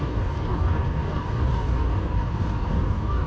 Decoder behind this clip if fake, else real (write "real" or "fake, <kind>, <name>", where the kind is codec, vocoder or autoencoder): fake, codec, DAC